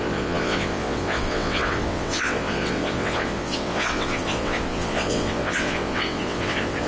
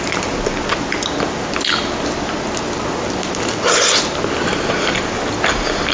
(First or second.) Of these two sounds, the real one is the second